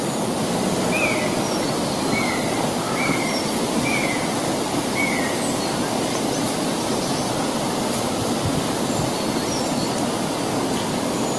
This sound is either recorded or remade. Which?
recorded